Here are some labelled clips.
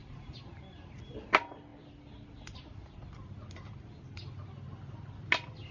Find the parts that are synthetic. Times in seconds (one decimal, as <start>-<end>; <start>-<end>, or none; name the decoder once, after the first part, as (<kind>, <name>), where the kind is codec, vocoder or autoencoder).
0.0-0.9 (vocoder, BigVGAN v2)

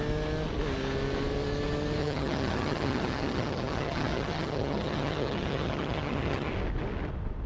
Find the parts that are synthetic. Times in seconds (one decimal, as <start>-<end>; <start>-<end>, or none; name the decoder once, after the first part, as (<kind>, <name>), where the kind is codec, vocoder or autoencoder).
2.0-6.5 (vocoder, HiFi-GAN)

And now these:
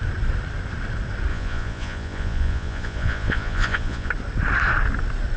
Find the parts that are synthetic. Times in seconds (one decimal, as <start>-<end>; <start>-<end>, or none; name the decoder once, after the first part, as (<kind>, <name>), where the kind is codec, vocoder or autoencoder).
1.3-4.1 (vocoder, Vocos)

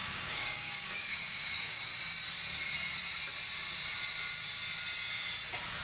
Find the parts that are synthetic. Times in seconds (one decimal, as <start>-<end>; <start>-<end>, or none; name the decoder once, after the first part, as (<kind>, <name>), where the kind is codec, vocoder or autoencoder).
0.0-1.9 (codec, DAC)

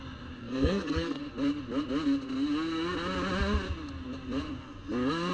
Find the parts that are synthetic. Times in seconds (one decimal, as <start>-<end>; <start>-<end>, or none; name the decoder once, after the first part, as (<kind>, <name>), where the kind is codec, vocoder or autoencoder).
0.4-1.2 (codec, SNAC)

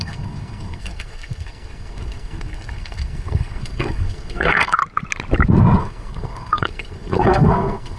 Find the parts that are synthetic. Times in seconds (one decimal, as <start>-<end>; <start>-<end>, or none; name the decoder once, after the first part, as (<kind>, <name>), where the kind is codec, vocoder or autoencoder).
0.0-4.8 (codec, SNAC); 5.8-8.0

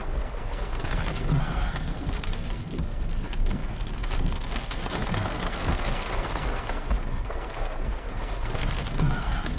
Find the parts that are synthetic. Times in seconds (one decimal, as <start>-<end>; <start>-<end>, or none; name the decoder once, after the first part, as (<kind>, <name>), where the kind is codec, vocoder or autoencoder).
0.0-9.6 (codec, SNAC)

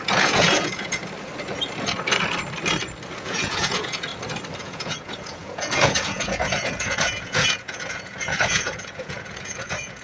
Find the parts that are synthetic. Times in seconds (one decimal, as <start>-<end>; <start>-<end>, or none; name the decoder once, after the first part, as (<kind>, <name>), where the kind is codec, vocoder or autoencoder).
0.0-1.0 (vocoder, Vocos); 3.2-4.1; 4.6-10.0